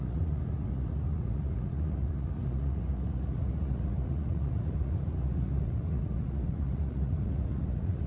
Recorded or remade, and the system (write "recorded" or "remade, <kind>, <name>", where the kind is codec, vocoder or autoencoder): remade, vocoder, Vocos